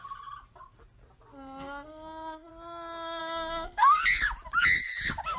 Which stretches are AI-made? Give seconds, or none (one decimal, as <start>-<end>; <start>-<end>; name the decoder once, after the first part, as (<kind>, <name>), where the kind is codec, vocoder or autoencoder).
1.3-2.5 (codec, SNAC); 3.2-4.0